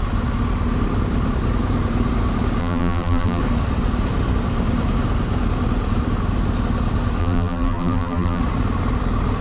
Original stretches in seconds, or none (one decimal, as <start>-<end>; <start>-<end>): 0.0-2.6; 3.4-7.2; 8.4-9.4

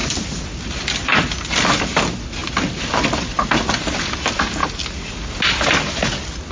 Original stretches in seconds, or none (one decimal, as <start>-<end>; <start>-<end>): 0.0-6.5

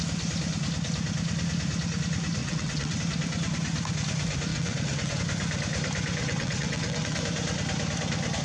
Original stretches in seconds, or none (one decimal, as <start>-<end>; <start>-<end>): 0.0-2.4; 3.0-4.5; 5.2-6.2; 7.2-8.4

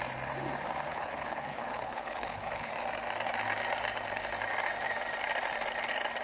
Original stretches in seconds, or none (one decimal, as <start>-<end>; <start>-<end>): 0.0-0.9; 2.7-6.2

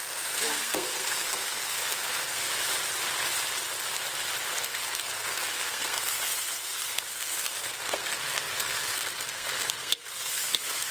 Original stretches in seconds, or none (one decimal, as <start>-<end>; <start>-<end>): 2.5-4.5

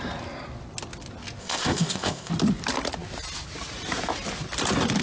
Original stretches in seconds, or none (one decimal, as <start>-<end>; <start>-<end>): 0.0-1.4; 2.3-5.0